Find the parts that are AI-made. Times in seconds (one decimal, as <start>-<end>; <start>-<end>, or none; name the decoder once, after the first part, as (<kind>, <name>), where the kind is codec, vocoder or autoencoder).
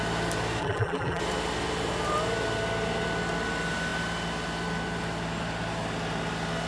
0.6-1.2 (vocoder, BigVGAN v2)